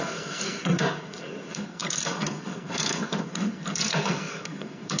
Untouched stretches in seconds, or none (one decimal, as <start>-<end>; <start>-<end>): none

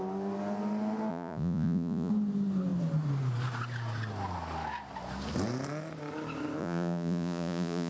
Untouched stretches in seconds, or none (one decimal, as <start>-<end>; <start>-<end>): 0.0-1.1; 2.1-6.6

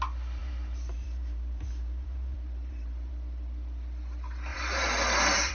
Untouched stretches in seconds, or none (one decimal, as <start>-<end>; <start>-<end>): 0.0-0.4; 3.1-4.5